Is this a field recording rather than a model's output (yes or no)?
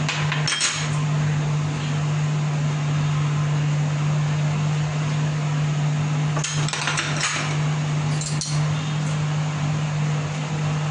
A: yes